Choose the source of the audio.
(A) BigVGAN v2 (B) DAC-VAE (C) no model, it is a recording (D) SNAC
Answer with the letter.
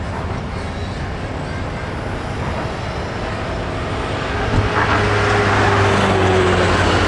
C